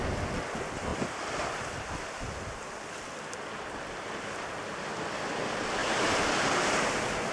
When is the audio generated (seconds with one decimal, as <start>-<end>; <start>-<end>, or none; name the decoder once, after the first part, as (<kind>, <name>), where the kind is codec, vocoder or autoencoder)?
5.8-6.8 (vocoder, BigVGAN v2)